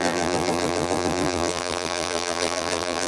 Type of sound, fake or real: fake